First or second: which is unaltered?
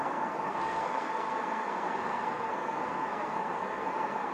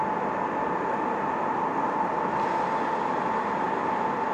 second